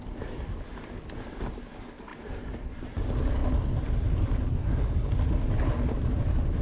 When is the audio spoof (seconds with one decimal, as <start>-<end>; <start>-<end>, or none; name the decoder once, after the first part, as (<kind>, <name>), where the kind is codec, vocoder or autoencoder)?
2.1-2.9 (vocoder, BigVGAN v2)